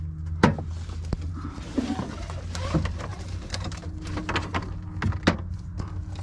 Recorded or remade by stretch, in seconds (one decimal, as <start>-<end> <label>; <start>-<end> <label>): 0.0-3.1 recorded; 3.1-4.2 remade; 4.2-6.2 recorded